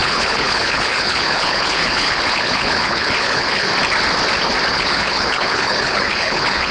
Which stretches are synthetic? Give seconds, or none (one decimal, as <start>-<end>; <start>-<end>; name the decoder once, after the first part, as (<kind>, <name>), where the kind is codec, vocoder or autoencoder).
0.0-3.7 (codec, HILCodec); 4.7-6.7